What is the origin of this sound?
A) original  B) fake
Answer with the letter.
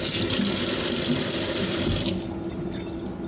A